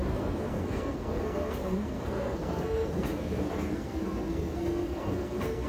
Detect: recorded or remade remade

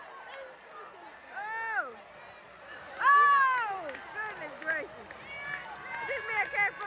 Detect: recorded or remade recorded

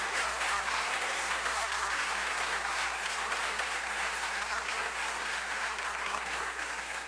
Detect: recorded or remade remade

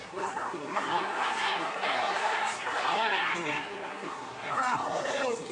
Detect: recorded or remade remade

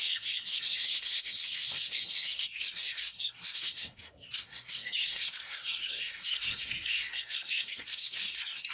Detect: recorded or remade remade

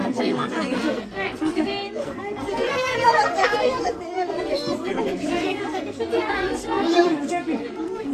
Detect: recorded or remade remade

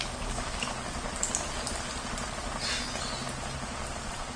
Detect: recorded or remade recorded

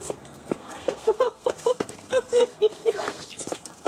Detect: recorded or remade remade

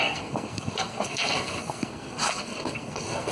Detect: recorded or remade remade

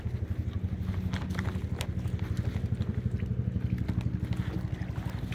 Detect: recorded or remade recorded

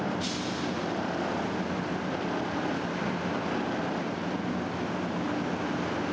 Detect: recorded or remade recorded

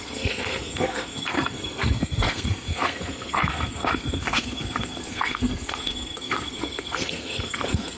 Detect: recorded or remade remade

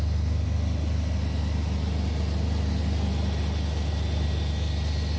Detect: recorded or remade recorded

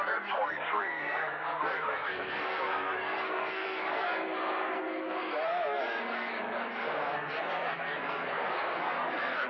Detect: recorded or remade remade